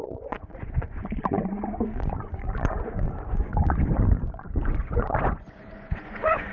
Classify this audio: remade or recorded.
remade